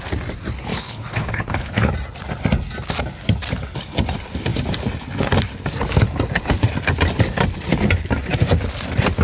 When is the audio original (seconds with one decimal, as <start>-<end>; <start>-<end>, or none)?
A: 0.0-0.7; 1.9-9.2